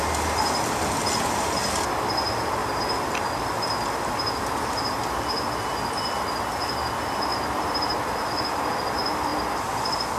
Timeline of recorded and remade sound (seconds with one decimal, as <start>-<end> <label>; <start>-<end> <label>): 0.0-7.3 recorded; 7.3-8.0 remade; 8.0-10.2 recorded